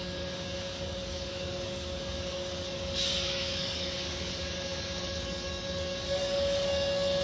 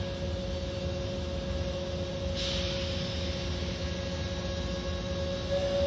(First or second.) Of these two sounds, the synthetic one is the first